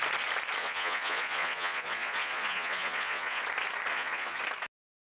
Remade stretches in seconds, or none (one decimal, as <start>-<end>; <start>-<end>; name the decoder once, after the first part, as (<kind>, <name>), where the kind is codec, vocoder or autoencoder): 0.6-3.4 (vocoder, Vocos); 3.9-4.4